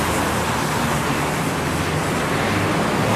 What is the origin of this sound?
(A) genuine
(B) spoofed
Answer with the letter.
A